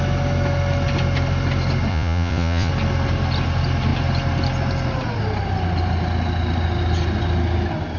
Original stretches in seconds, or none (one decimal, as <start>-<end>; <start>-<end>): 0.0-1.9; 2.7-8.0